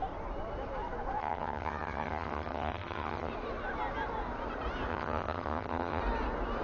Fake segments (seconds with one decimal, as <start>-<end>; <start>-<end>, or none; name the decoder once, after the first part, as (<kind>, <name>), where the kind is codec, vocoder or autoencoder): 1.2-3.3 (vocoder, HiFi-GAN); 4.9-6.0